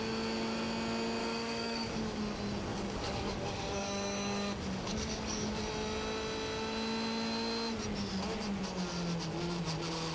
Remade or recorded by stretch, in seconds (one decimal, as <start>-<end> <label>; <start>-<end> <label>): 0.0-1.2 recorded; 1.2-2.2 remade; 2.2-2.7 recorded; 2.7-5.6 remade; 5.6-10.1 recorded